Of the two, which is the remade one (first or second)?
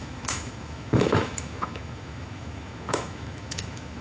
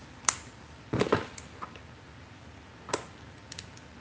first